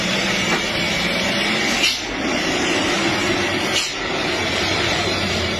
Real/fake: real